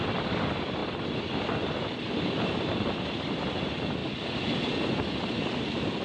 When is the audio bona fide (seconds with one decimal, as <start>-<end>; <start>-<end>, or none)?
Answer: 4.0-6.0